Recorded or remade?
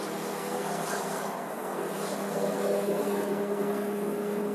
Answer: remade